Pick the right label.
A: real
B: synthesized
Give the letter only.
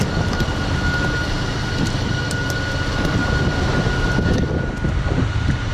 A